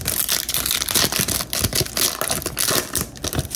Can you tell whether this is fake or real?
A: real